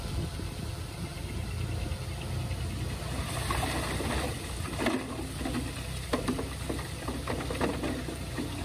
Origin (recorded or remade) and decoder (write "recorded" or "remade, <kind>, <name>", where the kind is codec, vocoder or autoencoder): recorded